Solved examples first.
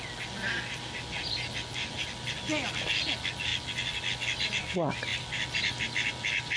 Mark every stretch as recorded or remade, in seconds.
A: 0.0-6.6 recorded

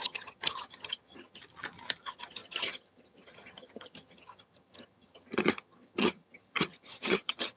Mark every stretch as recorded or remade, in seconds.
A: 0.0-1.4 remade; 1.4-2.0 recorded; 2.0-7.6 remade

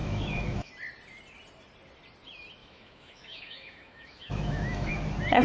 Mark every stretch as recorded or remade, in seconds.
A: 0.0-0.7 remade; 0.7-2.6 recorded; 2.6-4.9 remade; 4.9-5.4 recorded